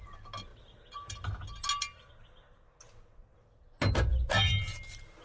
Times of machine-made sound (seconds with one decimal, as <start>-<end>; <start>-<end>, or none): none

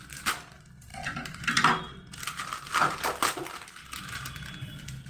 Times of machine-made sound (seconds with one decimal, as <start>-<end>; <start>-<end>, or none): none

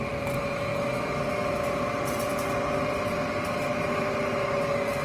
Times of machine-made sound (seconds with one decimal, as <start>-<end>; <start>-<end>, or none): none

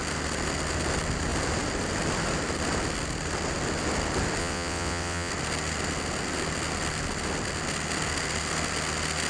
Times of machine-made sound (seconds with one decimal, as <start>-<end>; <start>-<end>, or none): 4.4-5.3

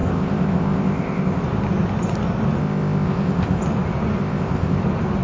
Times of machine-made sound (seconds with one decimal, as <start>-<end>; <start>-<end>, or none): 0.0-1.4; 2.6-3.6; 4.2-4.8